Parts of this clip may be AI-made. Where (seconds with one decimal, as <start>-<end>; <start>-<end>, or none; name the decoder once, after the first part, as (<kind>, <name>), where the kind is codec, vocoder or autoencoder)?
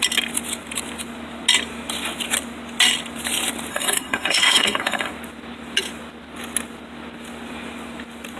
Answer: 3.7-5.1 (codec, SNAC)